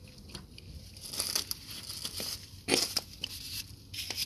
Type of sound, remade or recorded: recorded